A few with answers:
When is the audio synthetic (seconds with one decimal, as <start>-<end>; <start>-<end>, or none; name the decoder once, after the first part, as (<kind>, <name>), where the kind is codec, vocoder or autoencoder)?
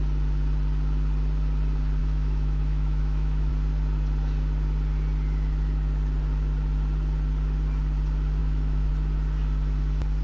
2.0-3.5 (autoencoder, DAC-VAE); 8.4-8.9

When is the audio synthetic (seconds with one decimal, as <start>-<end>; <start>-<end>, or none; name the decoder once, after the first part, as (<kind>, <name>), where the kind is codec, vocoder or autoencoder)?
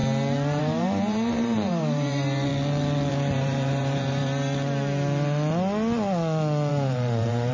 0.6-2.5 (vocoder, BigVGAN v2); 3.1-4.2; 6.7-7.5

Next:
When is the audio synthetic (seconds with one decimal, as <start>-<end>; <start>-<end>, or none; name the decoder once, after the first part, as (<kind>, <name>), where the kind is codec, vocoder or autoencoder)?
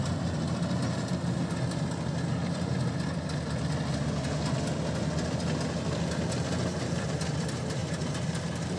6.7-7.2 (vocoder, BigVGAN v2); 7.8-8.8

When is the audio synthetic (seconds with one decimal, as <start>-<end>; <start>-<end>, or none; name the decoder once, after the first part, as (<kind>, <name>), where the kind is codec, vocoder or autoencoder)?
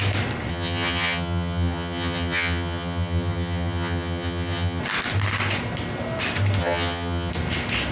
0.5-4.8 (vocoder, HiFi-GAN); 6.6-7.3